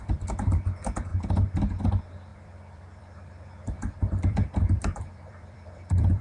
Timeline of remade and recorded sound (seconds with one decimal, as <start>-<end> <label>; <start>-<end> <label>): 0.0-2.3 recorded; 2.3-6.2 remade